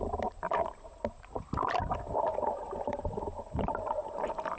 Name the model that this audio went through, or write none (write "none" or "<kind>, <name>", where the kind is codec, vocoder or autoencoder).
vocoder, BigVGAN v2